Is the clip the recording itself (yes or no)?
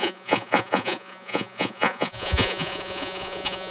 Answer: no